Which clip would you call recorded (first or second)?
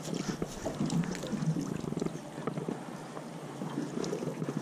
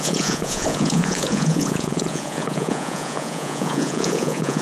first